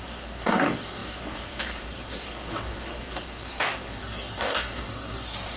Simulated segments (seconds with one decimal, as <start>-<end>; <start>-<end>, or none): 0.0-5.6